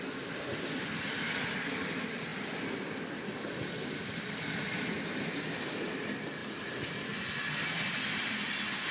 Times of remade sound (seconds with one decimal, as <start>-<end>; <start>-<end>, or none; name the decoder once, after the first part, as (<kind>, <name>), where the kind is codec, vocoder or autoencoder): none